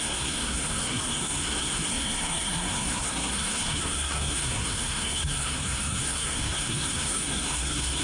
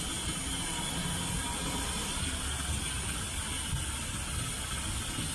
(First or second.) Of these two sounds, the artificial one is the first